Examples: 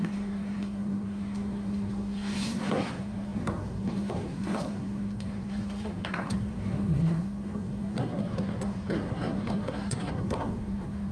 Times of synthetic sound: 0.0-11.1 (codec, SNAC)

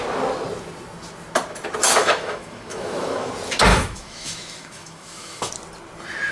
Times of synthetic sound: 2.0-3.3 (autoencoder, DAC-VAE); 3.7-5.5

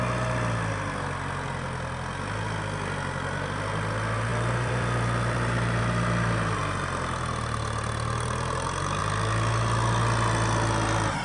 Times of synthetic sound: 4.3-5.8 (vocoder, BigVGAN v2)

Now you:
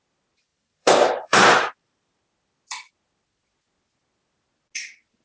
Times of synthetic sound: 0.5-2.2 (vocoder, BigVGAN v2)

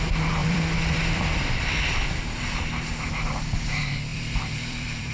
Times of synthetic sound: 0.4-2.2 (vocoder, BigVGAN v2); 4.1-5.1

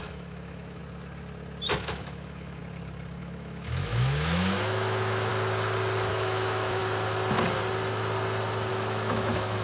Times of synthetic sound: 0.0-0.8 (autoencoder, DAC-VAE); 1.8-2.6; 3.2-5.3; 6.1-6.8; 8.7-9.6

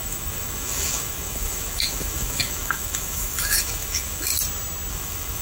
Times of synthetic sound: 0.0-4.3 (autoencoder, DAC-VAE); 4.9-5.4